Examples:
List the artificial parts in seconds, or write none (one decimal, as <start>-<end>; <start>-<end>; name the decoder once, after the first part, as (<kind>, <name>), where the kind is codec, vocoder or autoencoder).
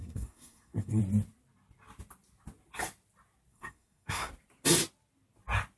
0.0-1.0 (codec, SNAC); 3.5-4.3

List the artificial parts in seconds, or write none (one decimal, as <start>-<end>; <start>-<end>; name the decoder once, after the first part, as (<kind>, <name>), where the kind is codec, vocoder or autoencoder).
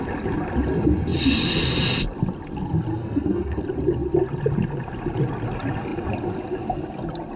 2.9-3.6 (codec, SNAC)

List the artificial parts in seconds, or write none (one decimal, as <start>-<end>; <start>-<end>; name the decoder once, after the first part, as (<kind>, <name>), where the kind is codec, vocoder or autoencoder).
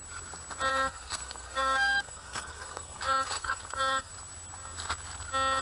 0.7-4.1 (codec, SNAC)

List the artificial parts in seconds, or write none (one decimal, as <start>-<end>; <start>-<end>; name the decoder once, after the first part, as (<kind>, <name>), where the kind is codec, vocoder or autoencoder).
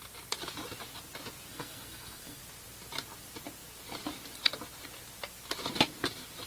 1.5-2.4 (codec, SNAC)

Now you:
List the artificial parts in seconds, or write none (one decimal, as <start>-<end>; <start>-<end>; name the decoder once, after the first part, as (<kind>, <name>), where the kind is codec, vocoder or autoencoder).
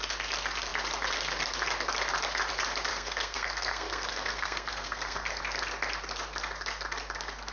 2.9-5.4 (codec, SNAC)